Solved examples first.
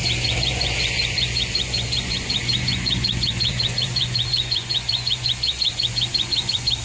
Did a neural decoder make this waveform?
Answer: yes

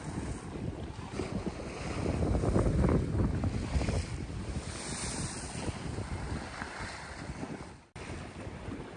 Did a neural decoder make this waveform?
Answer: no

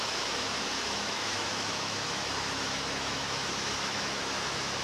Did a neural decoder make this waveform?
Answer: yes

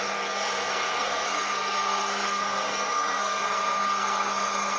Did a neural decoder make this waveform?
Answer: yes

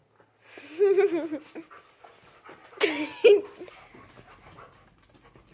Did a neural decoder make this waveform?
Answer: no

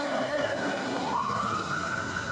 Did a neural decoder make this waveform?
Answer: yes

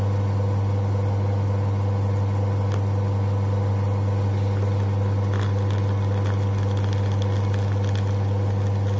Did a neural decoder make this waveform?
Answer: no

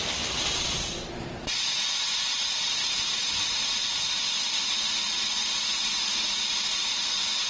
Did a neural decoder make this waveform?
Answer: no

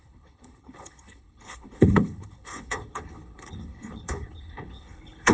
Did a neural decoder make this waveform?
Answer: yes